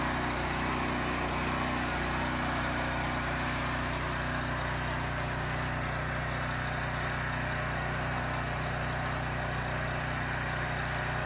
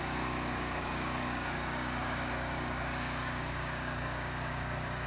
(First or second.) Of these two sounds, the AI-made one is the second